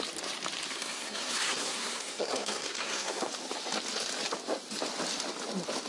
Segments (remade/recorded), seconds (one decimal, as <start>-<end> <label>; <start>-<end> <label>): 0.0-0.7 recorded; 0.7-3.3 remade; 3.3-5.9 recorded